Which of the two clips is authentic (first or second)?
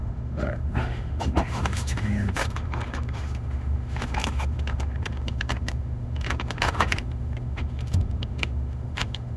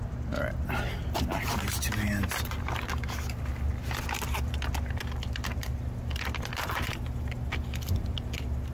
second